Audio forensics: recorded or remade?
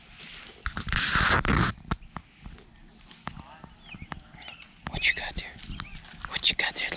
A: recorded